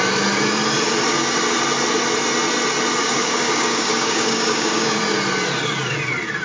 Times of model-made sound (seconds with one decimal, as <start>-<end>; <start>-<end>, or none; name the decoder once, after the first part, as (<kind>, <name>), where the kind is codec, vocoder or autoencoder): 3.0-5.0 (codec, DAC)